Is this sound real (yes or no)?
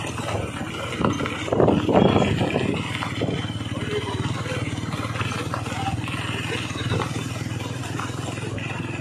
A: yes